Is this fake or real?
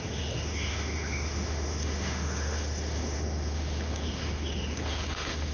fake